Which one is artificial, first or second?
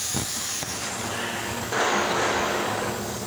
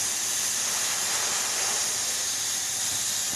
first